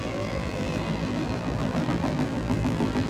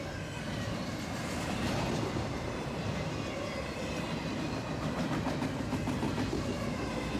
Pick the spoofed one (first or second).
first